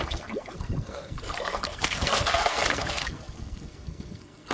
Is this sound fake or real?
fake